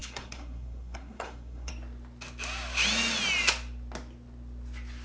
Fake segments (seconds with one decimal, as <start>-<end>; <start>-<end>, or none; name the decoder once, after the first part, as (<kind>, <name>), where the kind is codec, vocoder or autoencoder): 0.0-1.7 (codec, SNAC)